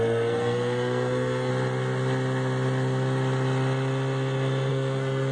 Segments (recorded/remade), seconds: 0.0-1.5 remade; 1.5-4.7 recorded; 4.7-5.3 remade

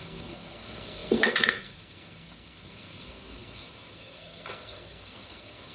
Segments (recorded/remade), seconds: 0.0-5.7 remade

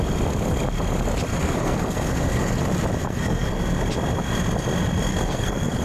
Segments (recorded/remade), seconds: 0.0-1.3 recorded; 1.3-2.6 remade; 2.6-3.0 recorded; 3.0-3.6 remade; 3.6-5.1 recorded; 5.1-5.8 remade

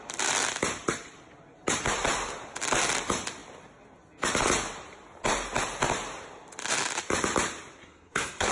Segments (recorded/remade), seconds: 0.0-7.8 recorded; 7.8-8.5 remade

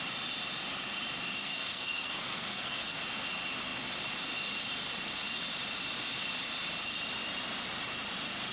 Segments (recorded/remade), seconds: 0.0-1.4 recorded; 1.4-3.0 remade; 3.0-8.5 recorded

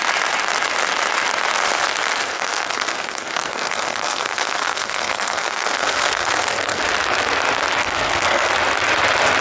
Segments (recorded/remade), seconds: 0.0-2.2 recorded; 2.2-6.8 remade; 6.8-7.8 recorded; 7.8-8.5 remade; 8.5-9.4 recorded

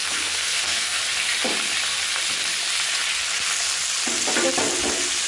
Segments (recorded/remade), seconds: 0.0-1.0 remade; 1.0-5.3 recorded

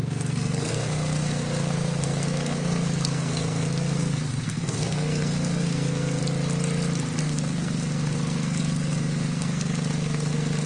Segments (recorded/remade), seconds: 0.0-6.2 remade; 6.2-7.2 recorded; 7.2-10.7 remade